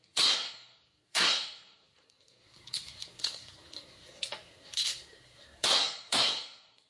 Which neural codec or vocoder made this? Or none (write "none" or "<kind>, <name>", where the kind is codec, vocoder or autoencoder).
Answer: codec, SNAC